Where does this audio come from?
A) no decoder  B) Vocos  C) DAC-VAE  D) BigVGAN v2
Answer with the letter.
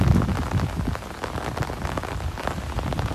A